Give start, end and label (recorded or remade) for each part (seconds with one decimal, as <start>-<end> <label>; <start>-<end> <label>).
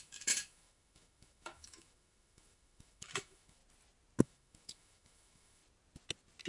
0.0-3.6 remade; 3.6-4.2 recorded; 4.2-5.6 remade; 5.6-6.5 recorded